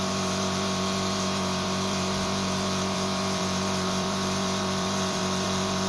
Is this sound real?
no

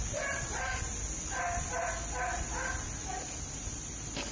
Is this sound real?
no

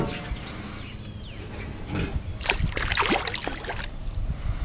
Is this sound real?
yes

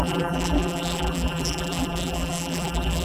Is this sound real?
no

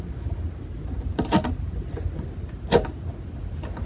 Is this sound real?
yes